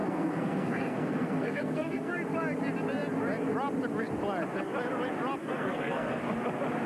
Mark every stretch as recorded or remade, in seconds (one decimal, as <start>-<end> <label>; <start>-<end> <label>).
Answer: 0.0-2.1 remade; 2.1-5.4 recorded; 5.4-6.2 remade; 6.2-6.9 recorded